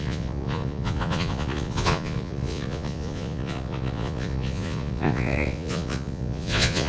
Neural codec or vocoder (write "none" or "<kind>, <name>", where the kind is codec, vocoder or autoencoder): vocoder, Vocos